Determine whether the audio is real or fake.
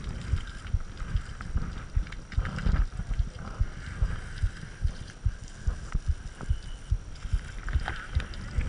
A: real